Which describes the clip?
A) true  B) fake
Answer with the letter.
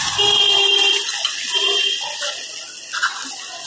A